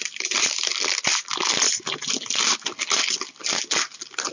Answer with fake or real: real